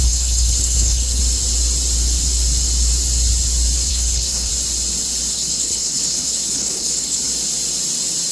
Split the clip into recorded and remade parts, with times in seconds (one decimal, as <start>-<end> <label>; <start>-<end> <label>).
0.0-1.2 remade; 1.2-3.9 recorded; 3.9-4.5 remade; 4.5-5.3 recorded; 5.3-7.3 remade; 7.3-8.3 recorded